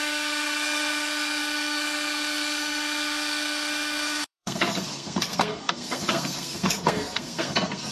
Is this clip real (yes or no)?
no